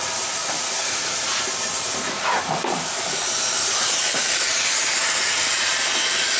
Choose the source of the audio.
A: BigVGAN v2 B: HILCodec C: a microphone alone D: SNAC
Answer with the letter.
A